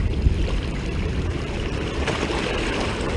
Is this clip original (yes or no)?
no